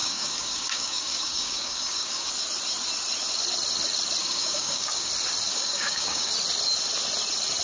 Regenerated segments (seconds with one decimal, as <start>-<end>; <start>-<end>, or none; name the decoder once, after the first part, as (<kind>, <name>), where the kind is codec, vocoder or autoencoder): 0.0-2.3 (codec, DAC); 4.2-5.1; 5.5-6.3